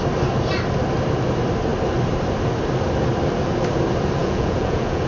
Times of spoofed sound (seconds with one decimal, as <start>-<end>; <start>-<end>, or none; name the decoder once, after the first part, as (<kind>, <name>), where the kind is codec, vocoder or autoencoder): 4.2-5.1 (vocoder, Vocos)